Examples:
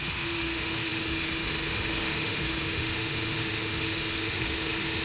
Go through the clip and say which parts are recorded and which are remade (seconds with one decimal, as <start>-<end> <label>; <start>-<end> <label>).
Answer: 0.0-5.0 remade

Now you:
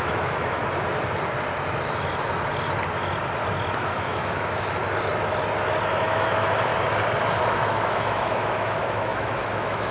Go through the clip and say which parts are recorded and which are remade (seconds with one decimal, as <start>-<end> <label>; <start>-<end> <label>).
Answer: 0.0-0.6 remade; 0.6-3.8 recorded; 3.8-4.8 remade; 4.8-5.9 recorded; 5.9-6.7 remade; 6.7-7.4 recorded; 7.4-9.9 remade

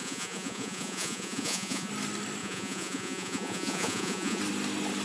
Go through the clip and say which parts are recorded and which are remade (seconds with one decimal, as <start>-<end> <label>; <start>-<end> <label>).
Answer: 0.0-1.9 remade; 1.9-2.4 recorded; 2.4-4.4 remade; 4.4-5.0 recorded